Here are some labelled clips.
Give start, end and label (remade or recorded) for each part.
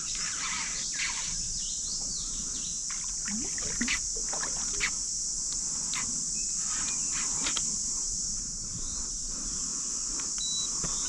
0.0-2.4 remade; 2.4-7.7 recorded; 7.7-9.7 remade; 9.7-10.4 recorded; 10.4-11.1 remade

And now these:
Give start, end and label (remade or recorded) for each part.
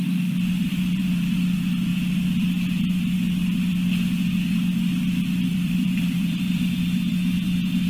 0.0-0.7 recorded; 0.7-1.3 remade; 1.3-5.5 recorded; 5.5-7.1 remade; 7.1-7.9 recorded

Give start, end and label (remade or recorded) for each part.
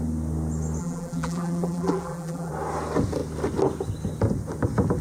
0.0-0.8 recorded; 0.8-2.5 remade; 2.5-5.0 recorded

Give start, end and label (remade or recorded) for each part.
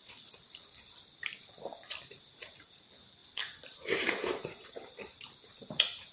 0.0-2.8 remade; 2.8-3.2 recorded; 3.2-6.1 remade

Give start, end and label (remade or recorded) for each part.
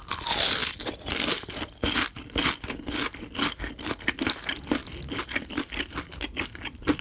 0.0-7.0 recorded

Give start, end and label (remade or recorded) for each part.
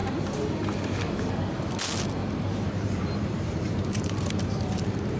0.0-2.2 recorded; 2.2-5.2 remade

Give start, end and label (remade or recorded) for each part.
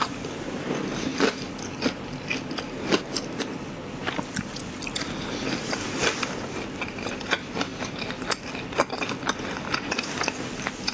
0.0-10.9 recorded